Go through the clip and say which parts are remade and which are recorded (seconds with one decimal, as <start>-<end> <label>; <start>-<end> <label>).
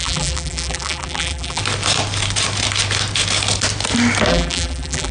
0.0-1.6 remade; 1.6-4.3 recorded; 4.3-5.1 remade